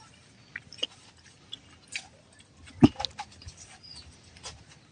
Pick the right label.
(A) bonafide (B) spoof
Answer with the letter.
A